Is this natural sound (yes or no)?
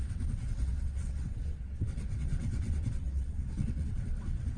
no